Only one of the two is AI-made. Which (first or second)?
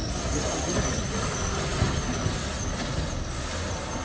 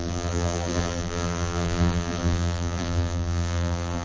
second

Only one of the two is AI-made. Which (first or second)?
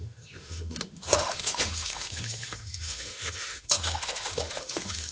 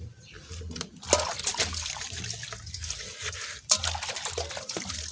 first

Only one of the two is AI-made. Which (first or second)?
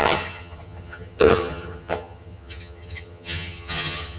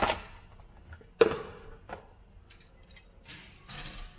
first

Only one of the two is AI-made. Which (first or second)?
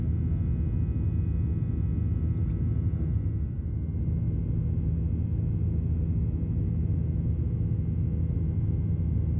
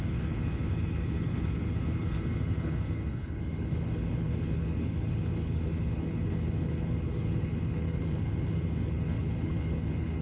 second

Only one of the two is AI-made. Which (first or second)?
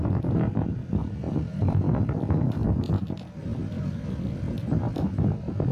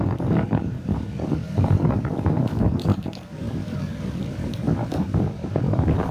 second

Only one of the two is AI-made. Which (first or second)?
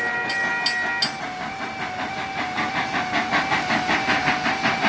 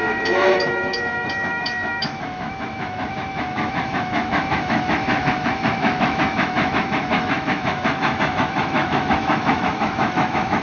second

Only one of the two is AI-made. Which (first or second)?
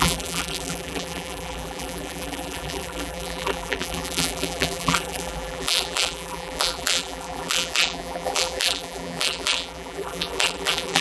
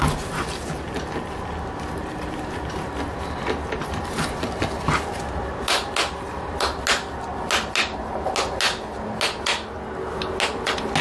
first